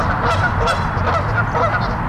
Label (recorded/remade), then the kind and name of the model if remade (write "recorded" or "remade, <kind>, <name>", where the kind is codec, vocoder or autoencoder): recorded